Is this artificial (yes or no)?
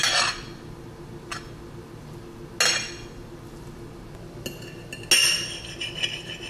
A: no